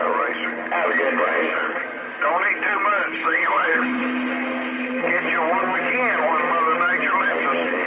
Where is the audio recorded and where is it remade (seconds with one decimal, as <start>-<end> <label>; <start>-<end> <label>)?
0.0-3.1 recorded; 3.1-4.0 remade; 4.0-7.9 recorded